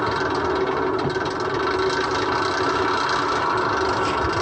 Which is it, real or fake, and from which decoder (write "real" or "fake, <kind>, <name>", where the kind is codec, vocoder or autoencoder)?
real